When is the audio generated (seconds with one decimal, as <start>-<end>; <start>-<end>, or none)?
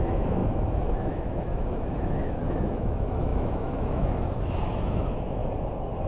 0.0-5.4